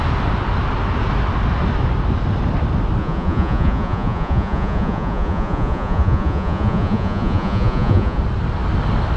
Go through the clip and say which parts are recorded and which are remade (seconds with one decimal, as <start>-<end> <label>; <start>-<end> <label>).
0.0-3.0 recorded; 3.0-8.2 remade; 8.2-9.2 recorded